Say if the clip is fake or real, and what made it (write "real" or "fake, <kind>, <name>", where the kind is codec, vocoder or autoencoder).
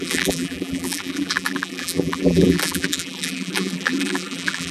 fake, vocoder, BigVGAN v2